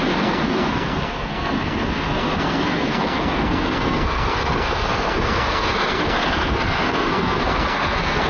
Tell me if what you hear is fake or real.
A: fake